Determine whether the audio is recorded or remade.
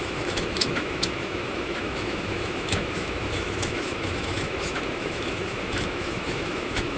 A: remade